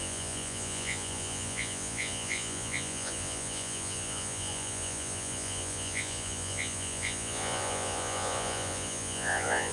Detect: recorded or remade remade